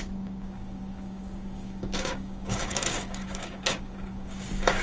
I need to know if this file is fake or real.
fake